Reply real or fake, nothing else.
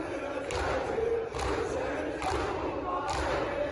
real